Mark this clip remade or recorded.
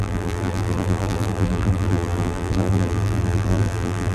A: remade